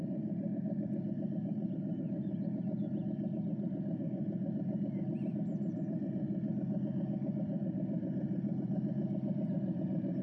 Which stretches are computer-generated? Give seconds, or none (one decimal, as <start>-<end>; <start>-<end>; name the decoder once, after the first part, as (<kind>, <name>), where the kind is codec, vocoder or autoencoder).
0.0-10.2 (vocoder, BigVGAN v2)